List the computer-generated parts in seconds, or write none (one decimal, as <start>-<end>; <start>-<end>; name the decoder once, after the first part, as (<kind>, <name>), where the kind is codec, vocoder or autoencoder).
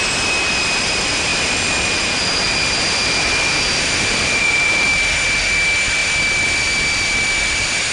1.3-5.0 (vocoder, BigVGAN v2)